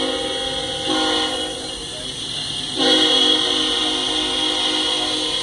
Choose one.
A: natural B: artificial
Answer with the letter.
A